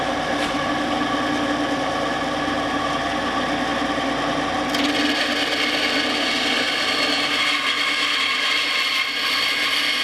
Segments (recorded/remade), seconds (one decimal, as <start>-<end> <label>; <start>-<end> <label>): 0.0-10.0 recorded